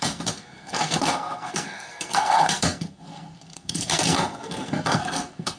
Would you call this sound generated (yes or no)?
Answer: yes